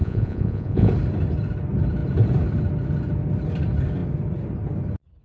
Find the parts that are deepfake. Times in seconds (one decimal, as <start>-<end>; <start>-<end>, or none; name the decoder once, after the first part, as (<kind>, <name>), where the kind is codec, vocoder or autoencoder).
0.0-0.9 (vocoder, Vocos)